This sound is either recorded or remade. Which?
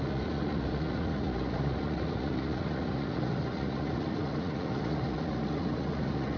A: remade